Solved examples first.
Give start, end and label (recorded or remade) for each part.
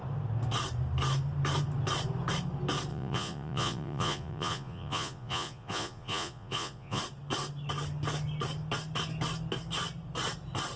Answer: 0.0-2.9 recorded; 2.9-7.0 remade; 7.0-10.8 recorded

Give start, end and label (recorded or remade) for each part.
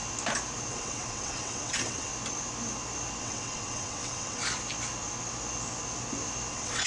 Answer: 0.0-0.7 recorded; 0.7-2.1 remade; 2.1-3.2 recorded; 3.2-4.4 remade; 4.4-6.5 recorded; 6.5-6.9 remade